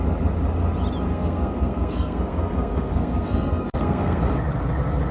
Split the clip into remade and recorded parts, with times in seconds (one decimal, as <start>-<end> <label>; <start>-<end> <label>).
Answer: 0.0-1.1 recorded; 1.1-4.2 remade; 4.2-5.1 recorded